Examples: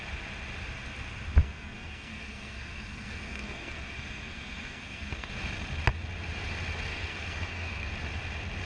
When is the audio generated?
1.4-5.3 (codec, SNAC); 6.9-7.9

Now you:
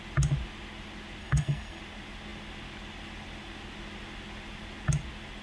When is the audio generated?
1.2-1.8 (codec, SNAC)

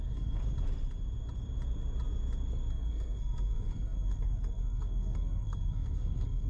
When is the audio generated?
0.0-0.4 (codec, SNAC); 2.7-6.5

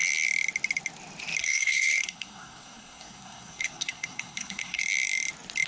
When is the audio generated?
1.4-4.8 (codec, SNAC)

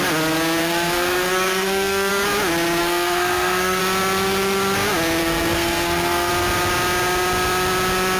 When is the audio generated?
0.6-2.1 (codec, SNAC); 2.8-3.8; 5.2-6.3

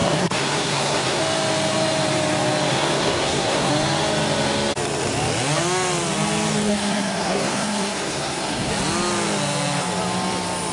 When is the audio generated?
0.0-1.2 (codec, SNAC); 2.7-3.7; 6.7-8.7

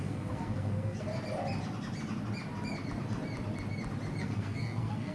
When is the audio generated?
0.0-1.1 (codec, SNAC); 4.2-5.1